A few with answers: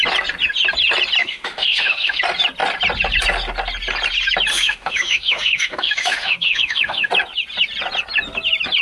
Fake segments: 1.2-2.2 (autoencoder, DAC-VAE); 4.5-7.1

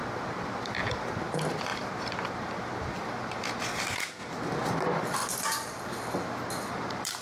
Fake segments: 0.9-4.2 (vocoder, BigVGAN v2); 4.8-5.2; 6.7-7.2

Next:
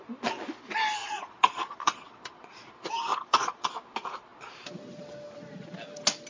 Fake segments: 1.0-2.7 (vocoder, Vocos); 3.1-3.7

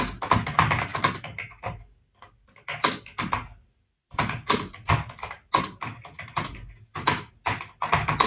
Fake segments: none